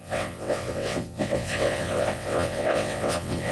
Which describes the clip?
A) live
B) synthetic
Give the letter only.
B